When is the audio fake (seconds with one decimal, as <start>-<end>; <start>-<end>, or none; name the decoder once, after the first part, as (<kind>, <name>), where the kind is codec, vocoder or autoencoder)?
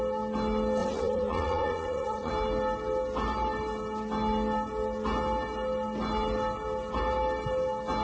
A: 0.8-2.3 (vocoder, Vocos)